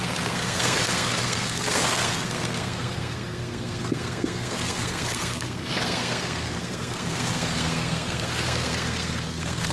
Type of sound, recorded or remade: remade